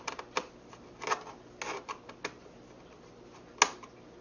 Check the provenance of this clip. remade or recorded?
recorded